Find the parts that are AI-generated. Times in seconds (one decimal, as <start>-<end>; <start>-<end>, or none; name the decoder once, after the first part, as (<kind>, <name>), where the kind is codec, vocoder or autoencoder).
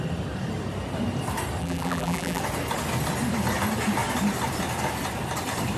1.6-2.4 (vocoder, BigVGAN v2)